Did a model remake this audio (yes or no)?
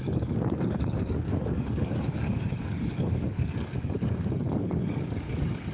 yes